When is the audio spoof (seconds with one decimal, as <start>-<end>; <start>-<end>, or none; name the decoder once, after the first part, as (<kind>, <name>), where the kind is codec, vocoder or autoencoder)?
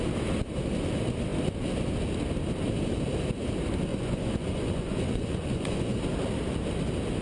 3.9-6.0 (vocoder, Vocos)